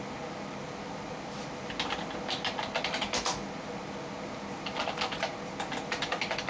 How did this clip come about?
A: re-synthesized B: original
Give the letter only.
B